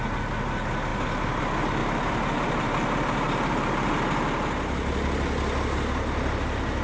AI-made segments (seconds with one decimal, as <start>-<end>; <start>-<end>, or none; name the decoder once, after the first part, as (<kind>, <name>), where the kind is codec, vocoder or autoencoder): 0.9-1.4 (vocoder, BigVGAN v2); 1.8-3.9